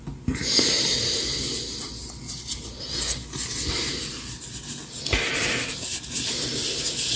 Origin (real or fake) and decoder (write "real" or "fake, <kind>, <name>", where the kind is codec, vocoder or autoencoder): real